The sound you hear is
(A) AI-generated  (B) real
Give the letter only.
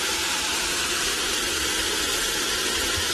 B